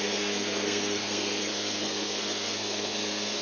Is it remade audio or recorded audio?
remade